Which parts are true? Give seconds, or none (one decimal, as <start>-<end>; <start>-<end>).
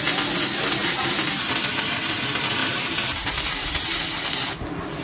0.0-2.6; 4.0-5.0